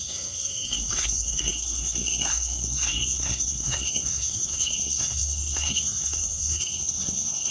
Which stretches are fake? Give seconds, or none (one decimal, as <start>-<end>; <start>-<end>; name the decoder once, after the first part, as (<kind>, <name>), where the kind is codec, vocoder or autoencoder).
0.0-7.5 (codec, SNAC)